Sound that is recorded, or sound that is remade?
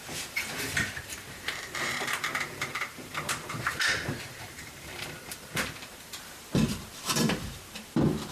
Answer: remade